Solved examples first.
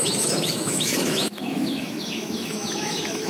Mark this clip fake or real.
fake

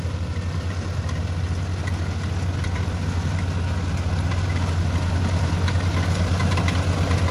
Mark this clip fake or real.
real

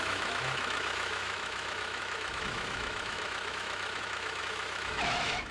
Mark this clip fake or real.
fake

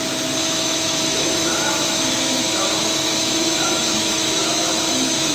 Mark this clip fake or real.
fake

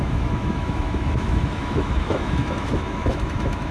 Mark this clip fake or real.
fake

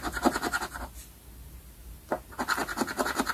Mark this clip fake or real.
real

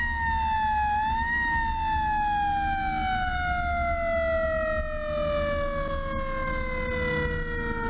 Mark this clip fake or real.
real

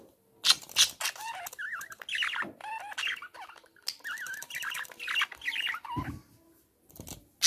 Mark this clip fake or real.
real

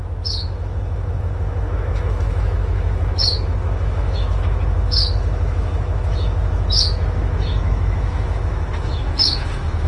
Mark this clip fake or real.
fake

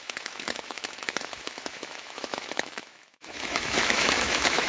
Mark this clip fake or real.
fake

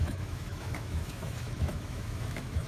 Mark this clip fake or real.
fake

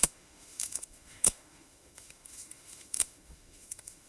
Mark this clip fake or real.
fake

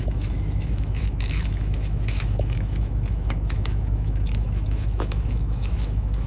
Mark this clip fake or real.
fake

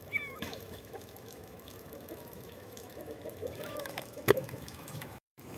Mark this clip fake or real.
fake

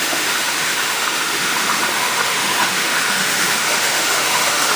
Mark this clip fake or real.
fake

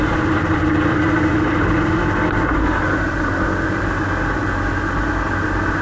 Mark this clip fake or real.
real